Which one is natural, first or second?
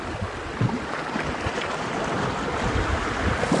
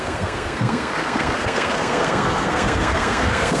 first